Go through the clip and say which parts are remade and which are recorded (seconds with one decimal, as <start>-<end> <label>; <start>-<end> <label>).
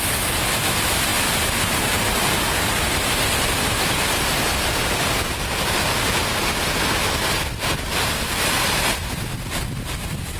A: 0.0-10.4 recorded